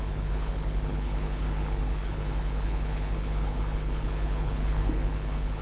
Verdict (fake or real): fake